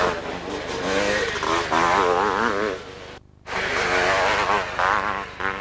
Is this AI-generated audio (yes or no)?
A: no